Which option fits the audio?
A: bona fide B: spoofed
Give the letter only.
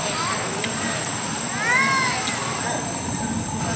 A